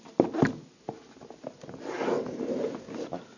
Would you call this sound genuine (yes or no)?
yes